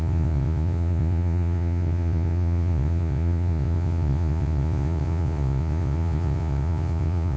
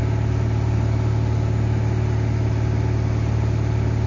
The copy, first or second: first